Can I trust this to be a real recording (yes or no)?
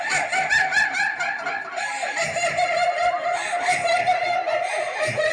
yes